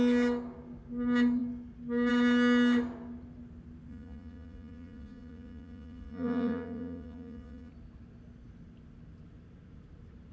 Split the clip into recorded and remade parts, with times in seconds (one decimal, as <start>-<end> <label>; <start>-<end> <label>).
0.0-3.9 recorded; 3.9-7.7 remade; 7.7-10.3 recorded